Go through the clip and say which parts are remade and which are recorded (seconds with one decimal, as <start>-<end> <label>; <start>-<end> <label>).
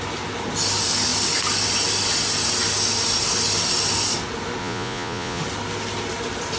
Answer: 0.0-4.6 recorded; 4.6-5.4 remade; 5.4-6.6 recorded